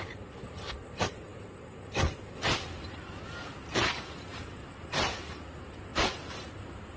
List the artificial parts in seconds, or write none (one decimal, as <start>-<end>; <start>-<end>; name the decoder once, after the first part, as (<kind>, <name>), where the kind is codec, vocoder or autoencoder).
4.3-5.3 (vocoder, BigVGAN v2); 5.9-7.0